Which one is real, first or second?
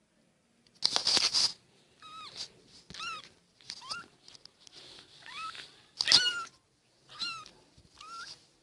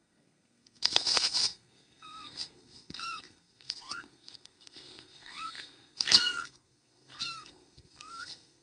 first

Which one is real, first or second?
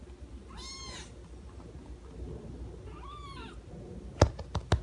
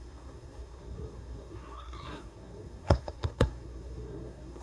first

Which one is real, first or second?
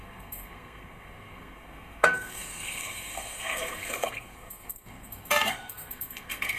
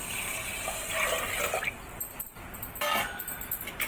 second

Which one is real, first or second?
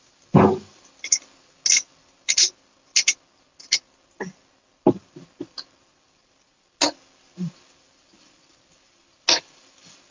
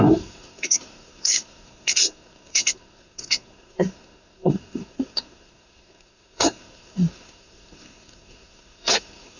first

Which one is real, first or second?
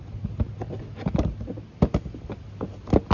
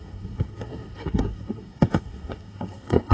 first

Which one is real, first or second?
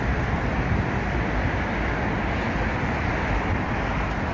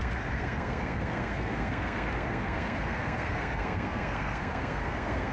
first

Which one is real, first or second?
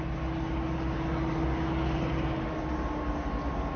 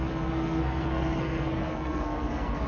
first